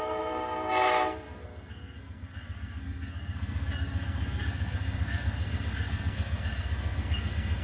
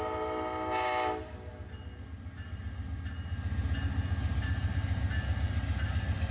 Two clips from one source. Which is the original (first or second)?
second